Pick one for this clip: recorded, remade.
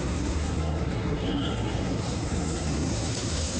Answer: remade